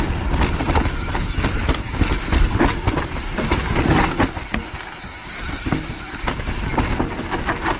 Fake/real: real